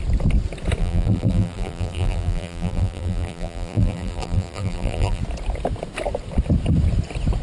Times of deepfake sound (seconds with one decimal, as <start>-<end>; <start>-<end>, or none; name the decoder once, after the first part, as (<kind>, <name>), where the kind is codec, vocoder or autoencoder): 0.8-5.2 (vocoder, BigVGAN v2)